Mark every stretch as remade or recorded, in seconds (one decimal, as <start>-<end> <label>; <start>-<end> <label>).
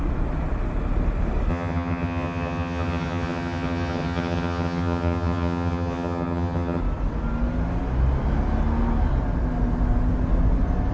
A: 0.0-1.5 recorded; 1.5-6.8 remade; 6.8-10.9 recorded